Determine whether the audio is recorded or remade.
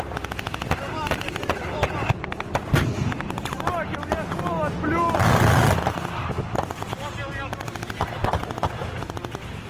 recorded